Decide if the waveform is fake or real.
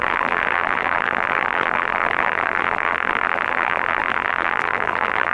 fake